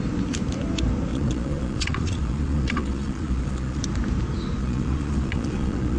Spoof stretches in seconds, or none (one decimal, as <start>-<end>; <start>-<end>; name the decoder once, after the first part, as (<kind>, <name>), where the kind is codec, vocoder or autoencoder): 1.1-3.8 (vocoder, Vocos); 4.6-6.0